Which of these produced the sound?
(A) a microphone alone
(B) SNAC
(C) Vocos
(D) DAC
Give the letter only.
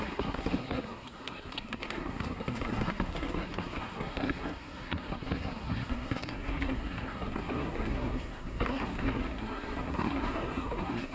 B